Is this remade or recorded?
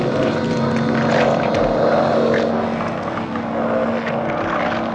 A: recorded